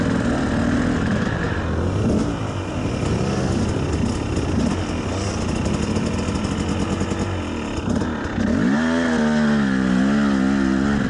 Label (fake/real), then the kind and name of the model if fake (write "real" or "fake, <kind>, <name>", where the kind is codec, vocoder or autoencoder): real